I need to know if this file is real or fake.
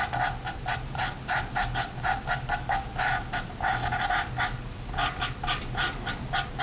real